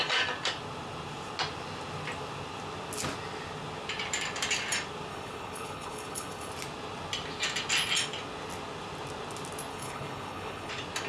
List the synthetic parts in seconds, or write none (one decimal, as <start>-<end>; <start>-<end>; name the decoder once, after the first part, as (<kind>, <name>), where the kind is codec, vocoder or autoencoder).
5.1-6.5 (codec, HILCodec); 9.7-10.7